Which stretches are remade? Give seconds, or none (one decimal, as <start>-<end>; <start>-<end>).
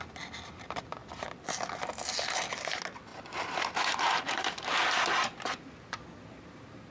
none